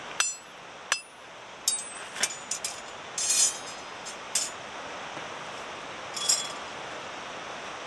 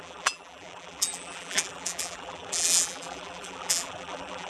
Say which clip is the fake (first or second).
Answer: second